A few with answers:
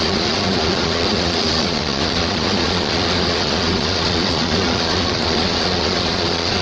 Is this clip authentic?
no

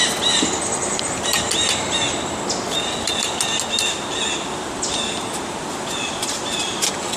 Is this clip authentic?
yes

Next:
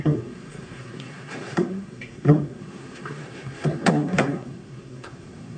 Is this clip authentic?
no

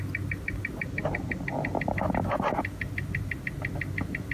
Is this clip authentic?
yes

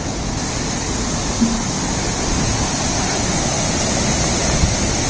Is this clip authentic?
yes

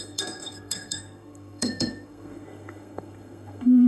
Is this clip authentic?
no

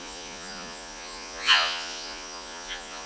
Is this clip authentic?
no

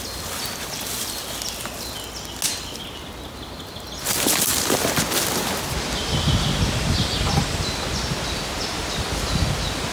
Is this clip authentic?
yes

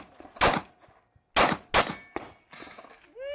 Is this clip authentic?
yes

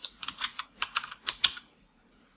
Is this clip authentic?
no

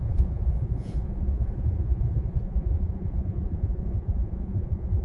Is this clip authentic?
no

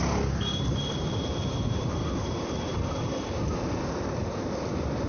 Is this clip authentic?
yes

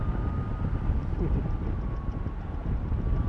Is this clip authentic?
yes